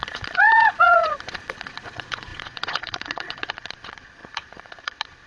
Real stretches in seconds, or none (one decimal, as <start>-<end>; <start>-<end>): none